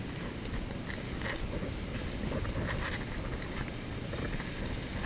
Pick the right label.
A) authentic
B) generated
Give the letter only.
A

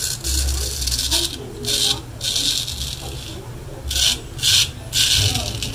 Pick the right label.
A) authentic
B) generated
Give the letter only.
A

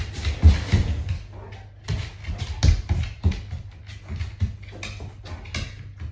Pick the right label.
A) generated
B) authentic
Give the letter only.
B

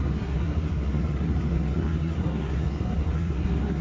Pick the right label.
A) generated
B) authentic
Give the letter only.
A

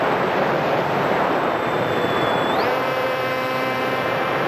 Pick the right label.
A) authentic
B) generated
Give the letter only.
B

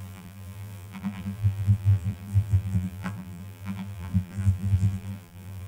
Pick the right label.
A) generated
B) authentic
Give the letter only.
A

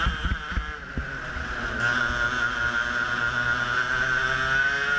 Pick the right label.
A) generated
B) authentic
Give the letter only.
B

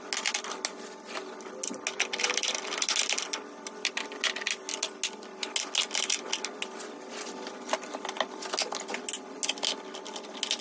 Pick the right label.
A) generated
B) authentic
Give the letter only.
B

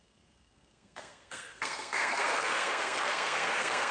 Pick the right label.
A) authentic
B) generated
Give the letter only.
B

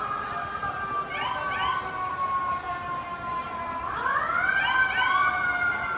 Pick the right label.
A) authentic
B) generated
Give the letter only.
A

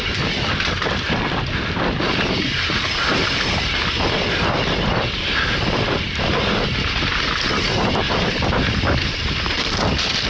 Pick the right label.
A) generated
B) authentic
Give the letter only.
B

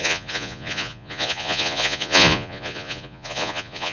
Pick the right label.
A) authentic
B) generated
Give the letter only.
B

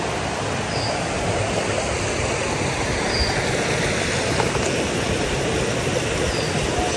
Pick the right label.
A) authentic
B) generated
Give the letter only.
A